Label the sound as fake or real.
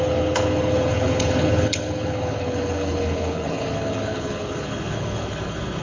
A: fake